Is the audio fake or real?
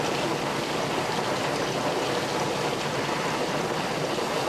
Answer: real